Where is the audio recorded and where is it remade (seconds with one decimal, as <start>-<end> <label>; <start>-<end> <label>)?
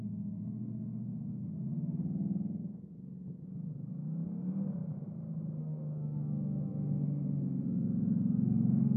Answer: 0.0-2.0 remade; 2.0-5.6 recorded; 5.6-9.0 remade